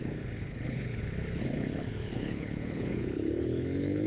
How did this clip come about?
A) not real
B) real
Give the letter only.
A